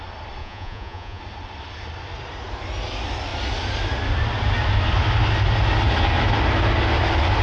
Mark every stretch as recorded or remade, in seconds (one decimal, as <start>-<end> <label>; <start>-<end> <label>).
0.0-0.4 recorded; 0.4-1.2 remade; 1.2-7.4 recorded